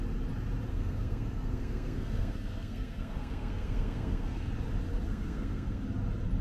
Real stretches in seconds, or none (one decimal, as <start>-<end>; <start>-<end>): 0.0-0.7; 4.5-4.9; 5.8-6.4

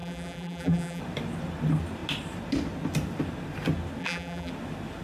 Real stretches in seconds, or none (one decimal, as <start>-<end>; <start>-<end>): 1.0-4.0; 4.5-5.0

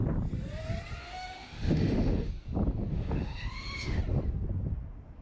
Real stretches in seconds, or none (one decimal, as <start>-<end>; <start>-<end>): 0.0-1.0; 2.3-2.9; 4.0-5.2

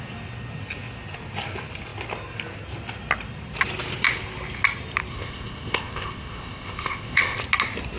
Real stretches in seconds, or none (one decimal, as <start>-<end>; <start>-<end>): 0.0-5.1; 7.4-8.0

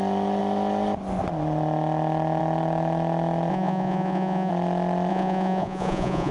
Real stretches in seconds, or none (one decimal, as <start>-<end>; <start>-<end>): 0.0-3.5; 4.5-5.1

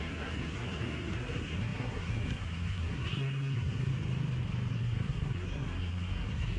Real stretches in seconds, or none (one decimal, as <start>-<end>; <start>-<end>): 3.9-4.7

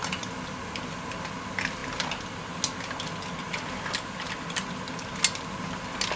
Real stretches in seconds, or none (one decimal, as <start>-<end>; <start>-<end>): 0.0-6.2

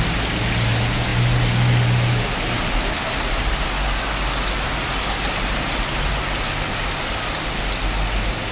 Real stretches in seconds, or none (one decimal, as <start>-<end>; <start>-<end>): 0.0-8.5